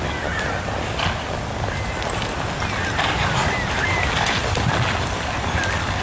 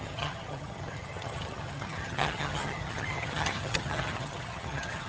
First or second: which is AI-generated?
second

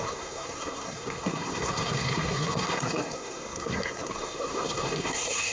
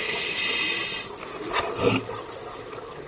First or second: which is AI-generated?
first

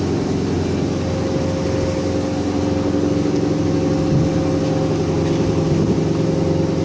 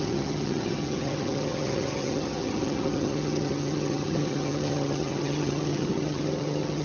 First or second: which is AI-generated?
second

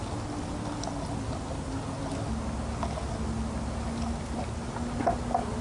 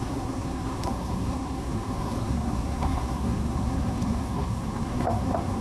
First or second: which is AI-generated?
second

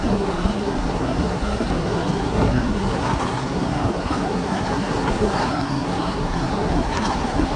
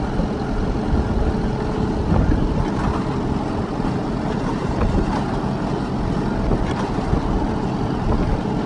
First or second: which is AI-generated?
first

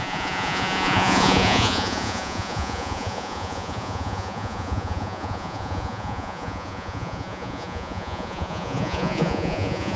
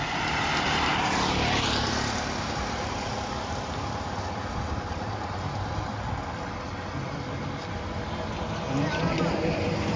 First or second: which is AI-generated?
first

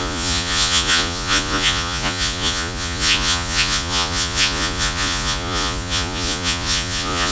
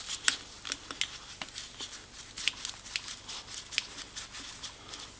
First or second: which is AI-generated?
first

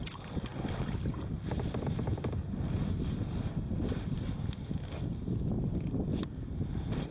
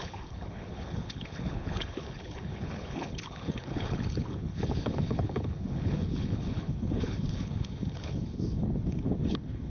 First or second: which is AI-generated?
second